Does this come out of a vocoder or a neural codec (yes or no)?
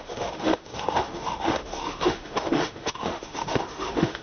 yes